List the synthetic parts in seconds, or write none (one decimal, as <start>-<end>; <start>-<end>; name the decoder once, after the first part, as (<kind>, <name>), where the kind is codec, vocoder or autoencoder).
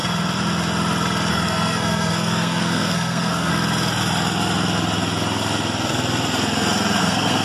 1.3-3.5 (codec, SNAC); 7.0-7.4